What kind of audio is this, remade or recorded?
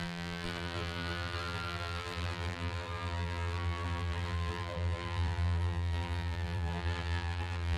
remade